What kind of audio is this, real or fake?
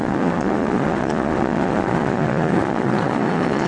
fake